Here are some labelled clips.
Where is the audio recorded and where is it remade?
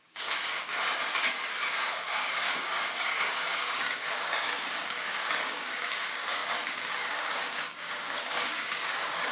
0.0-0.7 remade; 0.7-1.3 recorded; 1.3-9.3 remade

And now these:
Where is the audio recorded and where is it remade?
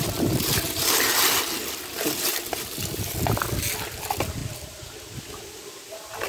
0.0-6.3 recorded